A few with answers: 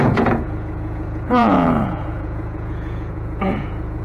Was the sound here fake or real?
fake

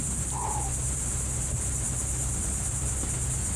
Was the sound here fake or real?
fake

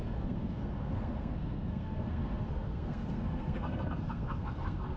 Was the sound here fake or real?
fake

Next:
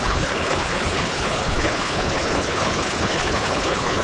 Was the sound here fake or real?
fake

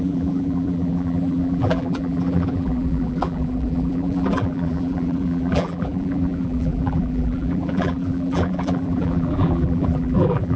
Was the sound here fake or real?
fake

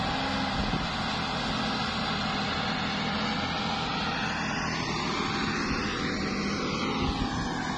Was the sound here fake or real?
real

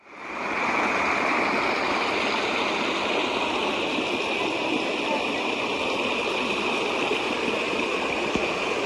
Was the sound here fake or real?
real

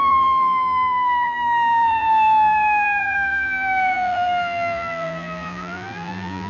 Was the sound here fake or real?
fake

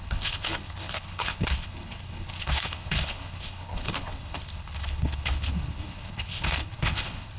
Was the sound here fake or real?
fake